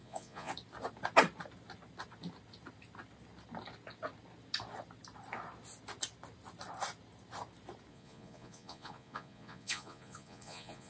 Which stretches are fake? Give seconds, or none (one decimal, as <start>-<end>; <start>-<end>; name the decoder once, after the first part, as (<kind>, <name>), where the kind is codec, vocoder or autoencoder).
0.0-0.5 (vocoder, Vocos); 7.9-10.9